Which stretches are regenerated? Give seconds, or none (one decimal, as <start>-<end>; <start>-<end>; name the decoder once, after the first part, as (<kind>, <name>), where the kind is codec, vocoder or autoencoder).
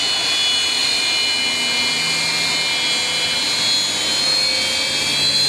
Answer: none